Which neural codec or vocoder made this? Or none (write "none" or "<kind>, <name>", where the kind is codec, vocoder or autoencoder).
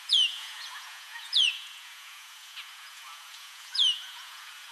vocoder, Vocos